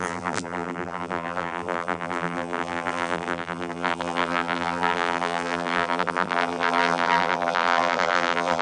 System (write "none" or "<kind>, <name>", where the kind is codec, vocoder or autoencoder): vocoder, BigVGAN v2